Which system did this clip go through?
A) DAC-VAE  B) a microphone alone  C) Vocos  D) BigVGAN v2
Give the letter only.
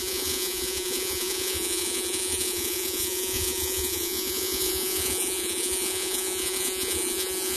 C